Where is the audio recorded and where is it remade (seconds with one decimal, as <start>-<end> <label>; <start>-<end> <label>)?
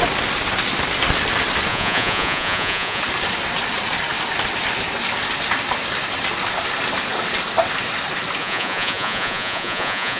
0.0-1.7 recorded; 1.7-3.0 remade; 3.0-8.4 recorded; 8.4-10.2 remade